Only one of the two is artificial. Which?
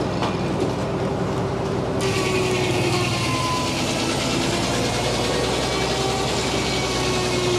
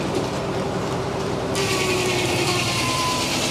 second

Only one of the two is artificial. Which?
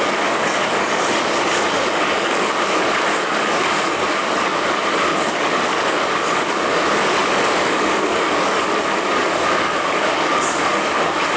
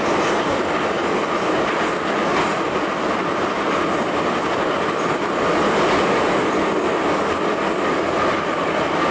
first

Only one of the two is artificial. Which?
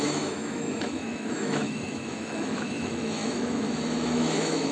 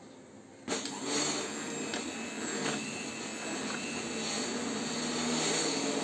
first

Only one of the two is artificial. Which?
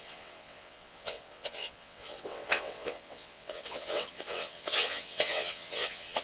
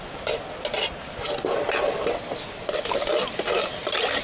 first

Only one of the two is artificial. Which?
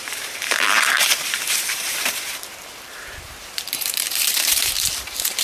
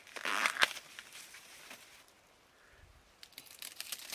first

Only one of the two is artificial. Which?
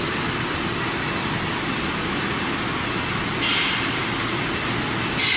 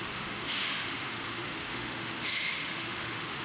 second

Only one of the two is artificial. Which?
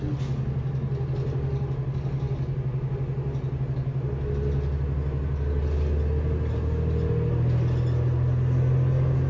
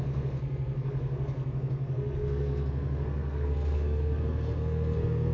second